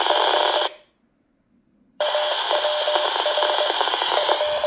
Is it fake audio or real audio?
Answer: real